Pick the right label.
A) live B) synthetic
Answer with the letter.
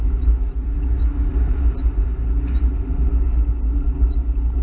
A